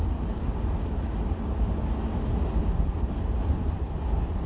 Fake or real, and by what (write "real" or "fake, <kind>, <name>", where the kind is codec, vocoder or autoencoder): real